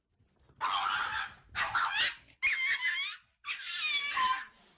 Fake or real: real